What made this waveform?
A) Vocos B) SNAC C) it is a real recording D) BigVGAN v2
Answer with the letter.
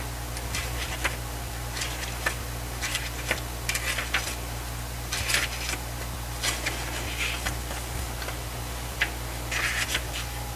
C